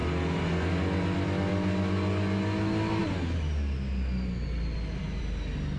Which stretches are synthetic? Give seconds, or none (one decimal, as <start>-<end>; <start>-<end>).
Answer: none